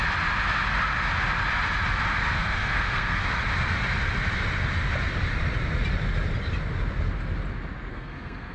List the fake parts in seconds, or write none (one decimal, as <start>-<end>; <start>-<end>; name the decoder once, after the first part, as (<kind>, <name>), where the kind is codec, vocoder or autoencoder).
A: 2.2-3.2 (codec, SNAC); 7.9-8.5